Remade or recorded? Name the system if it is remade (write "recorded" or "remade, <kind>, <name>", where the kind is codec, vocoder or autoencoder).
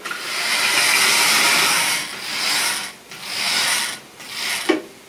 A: recorded